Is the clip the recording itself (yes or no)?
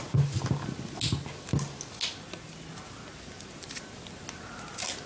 yes